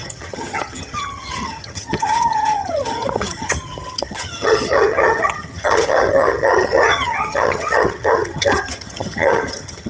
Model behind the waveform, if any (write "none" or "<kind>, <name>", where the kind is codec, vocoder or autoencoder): vocoder, HiFi-GAN